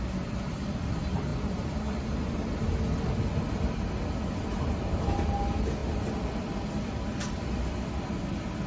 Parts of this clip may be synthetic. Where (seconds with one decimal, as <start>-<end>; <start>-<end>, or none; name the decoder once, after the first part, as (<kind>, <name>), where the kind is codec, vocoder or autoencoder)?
none